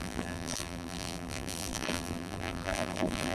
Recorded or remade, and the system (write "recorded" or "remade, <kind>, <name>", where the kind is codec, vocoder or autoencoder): remade, vocoder, BigVGAN v2